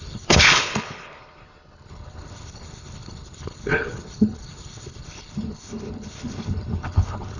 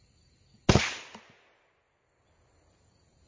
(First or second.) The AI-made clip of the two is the first